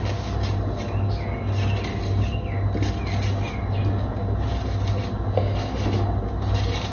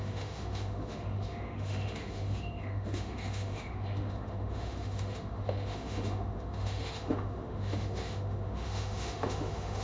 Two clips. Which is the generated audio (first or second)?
second